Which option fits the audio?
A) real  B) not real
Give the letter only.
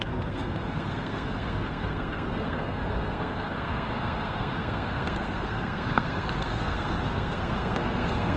B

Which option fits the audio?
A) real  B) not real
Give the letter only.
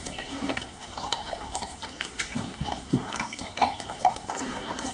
B